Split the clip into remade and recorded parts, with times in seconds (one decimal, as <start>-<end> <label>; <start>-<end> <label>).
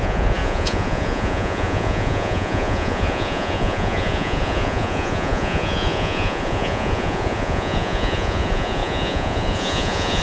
0.0-10.2 remade